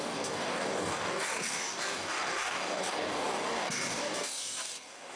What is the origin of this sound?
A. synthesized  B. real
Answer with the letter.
A